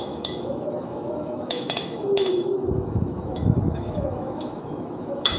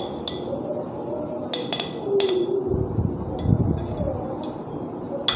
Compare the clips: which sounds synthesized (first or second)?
first